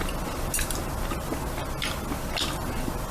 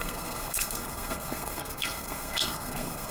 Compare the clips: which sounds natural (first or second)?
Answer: first